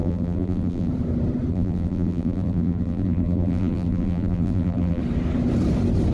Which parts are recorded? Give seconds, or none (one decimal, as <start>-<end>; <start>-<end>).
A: 0.9-1.5; 5.0-6.1